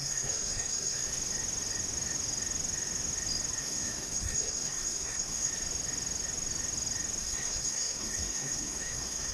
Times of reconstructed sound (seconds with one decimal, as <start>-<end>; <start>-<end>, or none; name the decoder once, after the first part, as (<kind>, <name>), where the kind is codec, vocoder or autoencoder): 0.0-1.1 (codec, SNAC); 3.6-5.5; 7.2-9.3